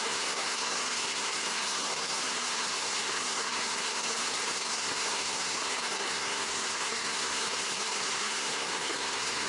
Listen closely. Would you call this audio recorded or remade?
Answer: remade